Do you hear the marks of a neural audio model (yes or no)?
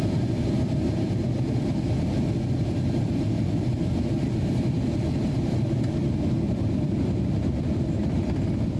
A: yes